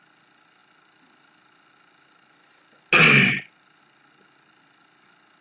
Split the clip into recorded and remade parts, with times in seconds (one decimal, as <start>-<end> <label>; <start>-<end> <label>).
0.0-5.4 recorded

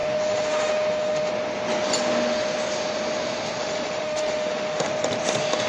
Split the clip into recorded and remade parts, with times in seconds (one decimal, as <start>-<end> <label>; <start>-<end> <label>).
0.0-1.3 remade; 1.3-3.6 recorded; 3.6-4.9 remade; 4.9-5.7 recorded

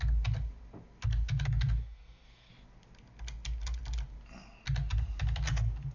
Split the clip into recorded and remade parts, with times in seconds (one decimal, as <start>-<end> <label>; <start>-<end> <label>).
0.0-1.8 recorded; 1.8-2.5 remade; 2.5-5.9 recorded

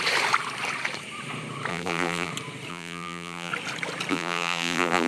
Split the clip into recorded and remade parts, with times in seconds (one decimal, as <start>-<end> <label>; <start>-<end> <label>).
0.0-1.7 recorded; 1.7-2.3 remade; 2.3-2.7 recorded; 2.7-3.5 remade; 3.5-4.1 recorded; 4.1-5.1 remade

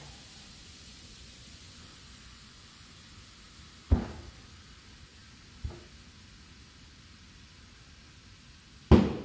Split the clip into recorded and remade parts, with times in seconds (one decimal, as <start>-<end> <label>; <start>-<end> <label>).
0.0-0.6 recorded; 0.6-2.9 remade; 2.9-9.2 recorded

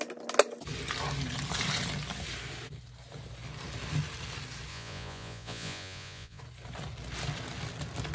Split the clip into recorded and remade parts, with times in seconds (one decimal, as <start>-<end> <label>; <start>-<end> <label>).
0.0-4.7 recorded; 4.7-6.4 remade; 6.4-8.1 recorded